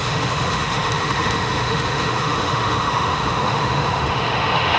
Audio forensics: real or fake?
fake